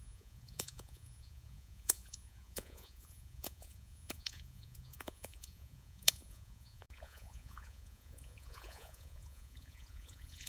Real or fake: fake